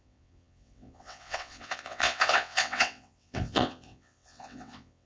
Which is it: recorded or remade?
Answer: remade